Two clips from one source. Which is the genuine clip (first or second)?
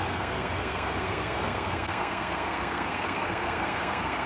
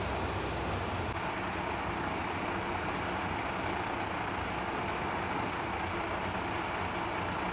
second